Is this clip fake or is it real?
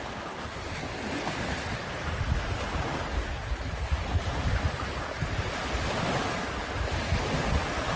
real